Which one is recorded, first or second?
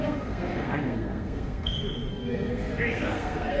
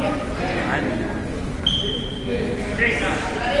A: second